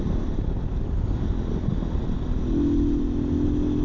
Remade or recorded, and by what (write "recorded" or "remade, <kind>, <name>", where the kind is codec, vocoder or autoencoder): recorded